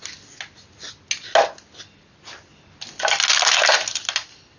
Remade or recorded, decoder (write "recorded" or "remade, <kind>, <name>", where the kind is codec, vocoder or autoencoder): recorded